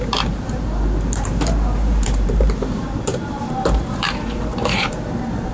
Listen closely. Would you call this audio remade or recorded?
remade